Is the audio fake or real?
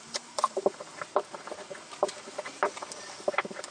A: real